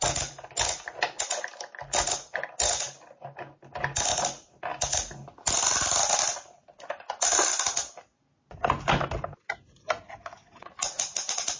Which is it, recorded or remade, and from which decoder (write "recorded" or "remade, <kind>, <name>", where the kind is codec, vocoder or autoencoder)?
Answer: recorded